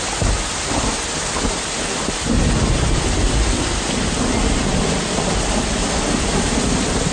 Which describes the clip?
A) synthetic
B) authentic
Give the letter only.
B